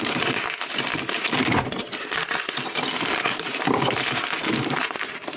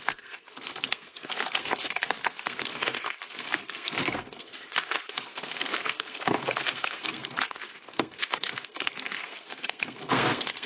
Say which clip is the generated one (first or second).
second